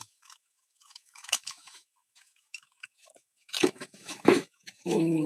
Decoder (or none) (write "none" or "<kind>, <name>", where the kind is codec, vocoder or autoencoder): autoencoder, DAC-VAE